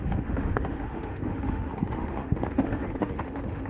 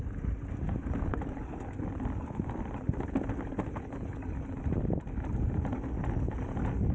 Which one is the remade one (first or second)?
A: first